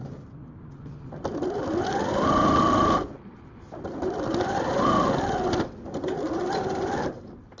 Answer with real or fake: real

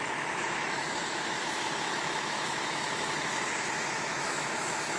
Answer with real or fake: fake